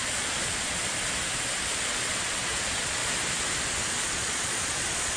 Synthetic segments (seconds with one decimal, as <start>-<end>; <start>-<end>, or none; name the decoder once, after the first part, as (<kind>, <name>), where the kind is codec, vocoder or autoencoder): 0.0-0.9 (vocoder, Vocos); 1.7-3.0; 4.0-5.2